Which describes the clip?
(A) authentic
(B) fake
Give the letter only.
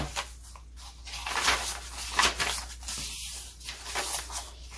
A